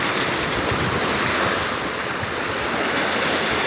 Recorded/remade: recorded